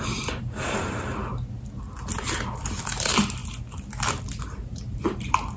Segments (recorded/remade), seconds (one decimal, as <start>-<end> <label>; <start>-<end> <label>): 0.0-1.2 remade; 1.2-1.8 recorded; 1.8-3.4 remade; 3.4-4.4 recorded; 4.4-5.6 remade